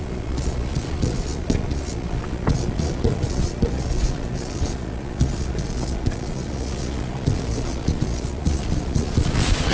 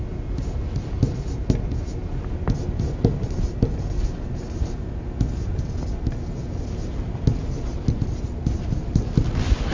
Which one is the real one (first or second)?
second